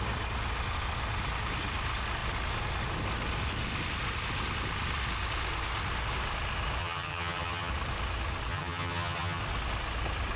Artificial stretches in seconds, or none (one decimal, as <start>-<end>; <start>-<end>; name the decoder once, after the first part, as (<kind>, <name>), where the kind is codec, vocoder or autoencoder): 6.8-7.7 (vocoder, HiFi-GAN); 8.5-9.4